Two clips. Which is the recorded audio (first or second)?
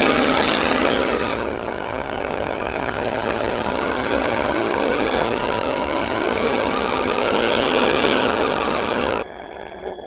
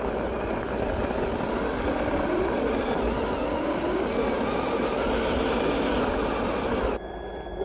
second